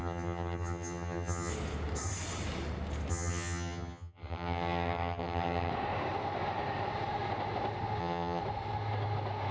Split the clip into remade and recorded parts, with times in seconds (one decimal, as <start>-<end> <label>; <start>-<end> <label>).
0.0-1.5 remade; 1.5-3.1 recorded; 3.1-5.7 remade; 5.7-8.0 recorded; 8.0-8.4 remade; 8.4-9.5 recorded